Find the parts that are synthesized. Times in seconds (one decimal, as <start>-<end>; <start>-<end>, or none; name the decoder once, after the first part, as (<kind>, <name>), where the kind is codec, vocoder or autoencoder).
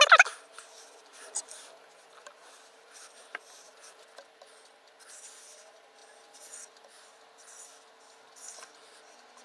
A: 1.0-1.6 (vocoder, BigVGAN v2)